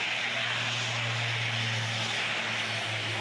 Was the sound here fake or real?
real